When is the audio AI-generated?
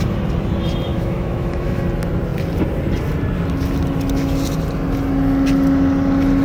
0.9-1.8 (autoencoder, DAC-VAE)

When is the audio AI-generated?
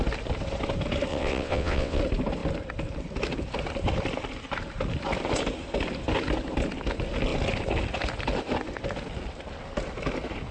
1.1-2.0 (vocoder, WaveNeXt)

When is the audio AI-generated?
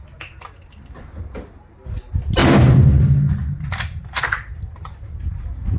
none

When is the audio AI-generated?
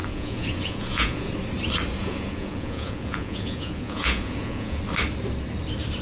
0.0-1.3 (vocoder, Vocos); 2.0-4.8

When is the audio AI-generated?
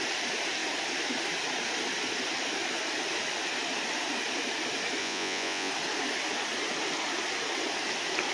5.0-5.7 (vocoder, Vocos)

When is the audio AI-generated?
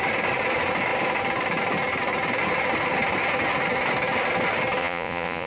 4.8-5.5 (vocoder, Vocos)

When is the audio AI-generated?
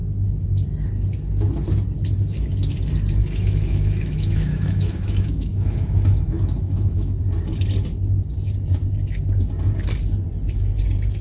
3.2-7.2 (autoencoder, DAC-VAE)